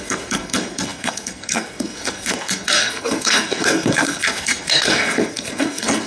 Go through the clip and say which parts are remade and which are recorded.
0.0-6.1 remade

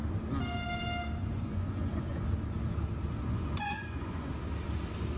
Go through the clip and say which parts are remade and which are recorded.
0.0-1.2 recorded; 1.2-2.2 remade; 2.2-3.3 recorded; 3.3-4.3 remade; 4.3-5.2 recorded

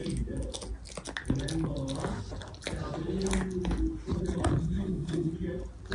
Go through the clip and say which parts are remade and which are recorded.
0.0-4.6 recorded; 4.6-5.3 remade; 5.3-5.9 recorded

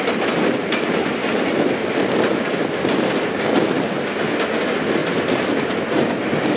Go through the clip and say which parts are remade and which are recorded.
0.0-6.6 recorded

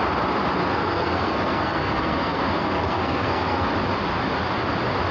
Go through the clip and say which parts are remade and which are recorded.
0.0-0.6 recorded; 0.6-3.7 remade; 3.7-5.1 recorded

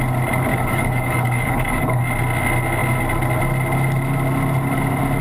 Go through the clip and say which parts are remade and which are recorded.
0.0-0.5 recorded; 0.5-2.0 remade; 2.0-5.2 recorded